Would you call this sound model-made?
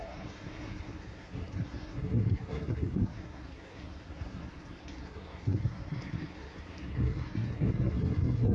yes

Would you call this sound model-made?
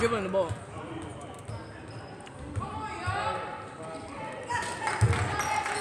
no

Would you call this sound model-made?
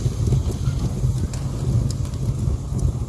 no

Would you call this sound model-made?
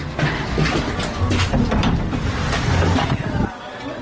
no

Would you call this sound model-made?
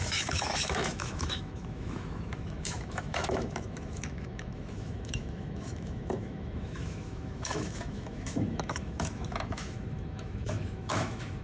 yes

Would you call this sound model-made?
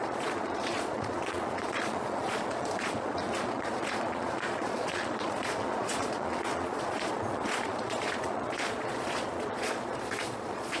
yes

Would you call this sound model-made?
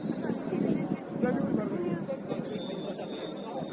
no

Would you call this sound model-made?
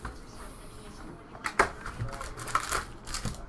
no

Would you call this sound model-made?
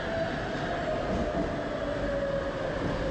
no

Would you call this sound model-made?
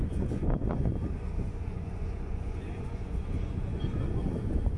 yes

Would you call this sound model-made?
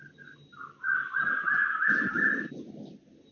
no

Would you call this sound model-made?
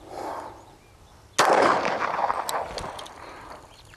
no